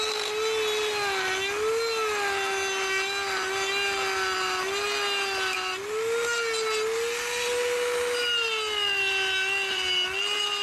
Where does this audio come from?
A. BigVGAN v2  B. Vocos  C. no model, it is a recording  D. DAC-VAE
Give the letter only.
C